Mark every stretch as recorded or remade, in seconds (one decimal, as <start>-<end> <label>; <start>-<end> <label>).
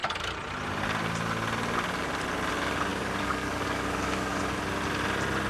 0.0-2.9 recorded; 2.9-4.4 remade; 4.4-5.5 recorded